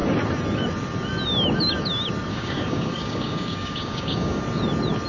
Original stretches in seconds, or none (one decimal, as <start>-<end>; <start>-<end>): 0.0-2.3; 4.4-5.1